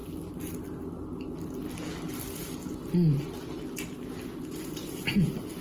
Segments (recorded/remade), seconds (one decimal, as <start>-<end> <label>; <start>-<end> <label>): 0.0-5.6 recorded